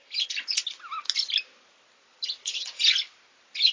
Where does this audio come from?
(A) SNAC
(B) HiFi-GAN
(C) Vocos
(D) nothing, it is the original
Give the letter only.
D